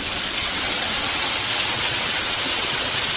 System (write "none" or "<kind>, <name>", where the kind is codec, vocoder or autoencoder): vocoder, WaveNeXt